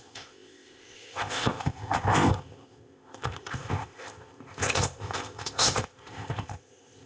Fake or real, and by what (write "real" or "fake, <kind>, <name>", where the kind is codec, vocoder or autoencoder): fake, codec, ZipCodec